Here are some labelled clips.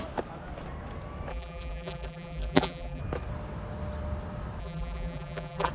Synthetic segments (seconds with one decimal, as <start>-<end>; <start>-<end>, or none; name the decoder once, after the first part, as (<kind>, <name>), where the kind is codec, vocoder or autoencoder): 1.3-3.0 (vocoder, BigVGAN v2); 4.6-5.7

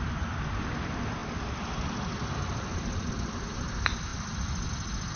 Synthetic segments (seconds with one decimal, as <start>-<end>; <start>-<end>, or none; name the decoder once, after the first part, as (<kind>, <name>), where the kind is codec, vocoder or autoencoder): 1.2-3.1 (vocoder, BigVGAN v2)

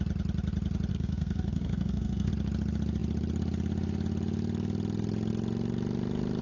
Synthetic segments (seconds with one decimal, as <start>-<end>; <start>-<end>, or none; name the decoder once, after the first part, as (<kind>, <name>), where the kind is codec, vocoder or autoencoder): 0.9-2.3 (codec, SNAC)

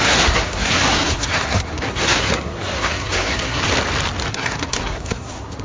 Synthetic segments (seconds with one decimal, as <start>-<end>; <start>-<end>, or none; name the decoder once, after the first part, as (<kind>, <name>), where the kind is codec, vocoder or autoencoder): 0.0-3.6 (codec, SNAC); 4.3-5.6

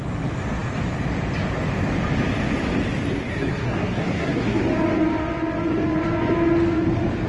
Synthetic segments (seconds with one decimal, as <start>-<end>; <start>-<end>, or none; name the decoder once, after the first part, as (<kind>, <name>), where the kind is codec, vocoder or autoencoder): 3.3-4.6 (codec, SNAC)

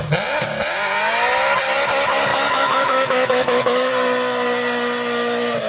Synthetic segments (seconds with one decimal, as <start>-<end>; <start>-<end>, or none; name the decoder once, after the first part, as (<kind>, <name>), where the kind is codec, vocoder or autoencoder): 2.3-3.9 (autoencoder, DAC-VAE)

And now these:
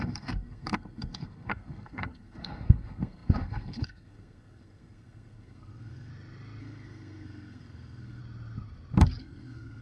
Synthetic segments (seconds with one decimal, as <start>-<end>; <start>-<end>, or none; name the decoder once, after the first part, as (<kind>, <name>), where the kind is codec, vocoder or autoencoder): 0.0-6.1 (codec, SNAC); 6.6-8.2; 9.2-9.8

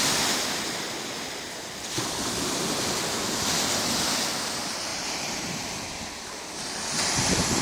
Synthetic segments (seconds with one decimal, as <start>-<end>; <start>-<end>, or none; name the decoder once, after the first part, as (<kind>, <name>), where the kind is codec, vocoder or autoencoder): 4.9-5.6 (vocoder, BigVGAN v2)